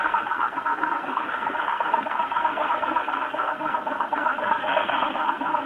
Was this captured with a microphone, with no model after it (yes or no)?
no